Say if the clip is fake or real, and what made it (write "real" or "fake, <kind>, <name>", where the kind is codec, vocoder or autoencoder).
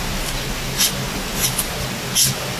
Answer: real